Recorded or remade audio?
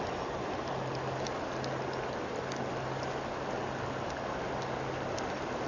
recorded